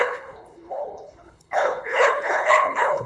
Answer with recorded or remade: remade